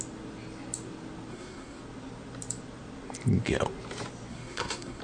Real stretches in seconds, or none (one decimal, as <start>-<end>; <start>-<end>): 0.0-1.3; 1.8-4.3